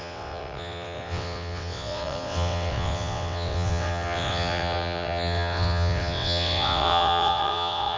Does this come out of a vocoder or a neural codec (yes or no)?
yes